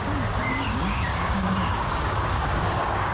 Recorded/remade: remade